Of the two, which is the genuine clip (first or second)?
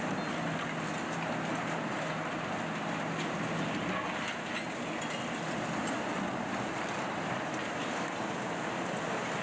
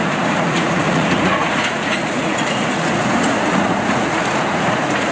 first